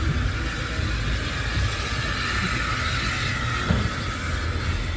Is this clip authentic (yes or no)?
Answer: yes